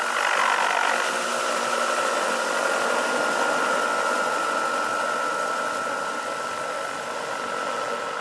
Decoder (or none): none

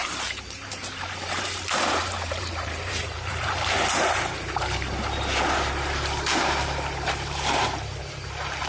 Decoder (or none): vocoder, BigVGAN v2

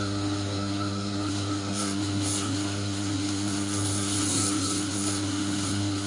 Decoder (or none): codec, SNAC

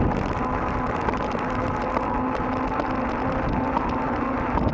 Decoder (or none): none